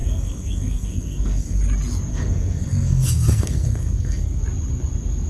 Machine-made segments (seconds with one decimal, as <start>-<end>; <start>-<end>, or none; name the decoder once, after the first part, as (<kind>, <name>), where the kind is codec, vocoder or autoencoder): 0.0-1.6 (codec, SNAC); 2.1-4.4